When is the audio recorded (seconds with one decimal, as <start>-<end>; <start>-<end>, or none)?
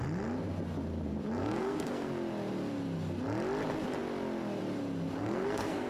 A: 0.0-1.4; 2.1-5.2